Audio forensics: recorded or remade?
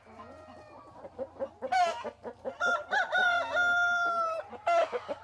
recorded